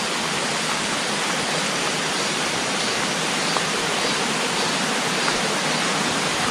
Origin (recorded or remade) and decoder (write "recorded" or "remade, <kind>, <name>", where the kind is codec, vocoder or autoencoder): recorded